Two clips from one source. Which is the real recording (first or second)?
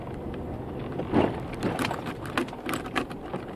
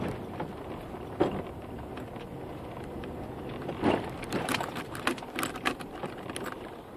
first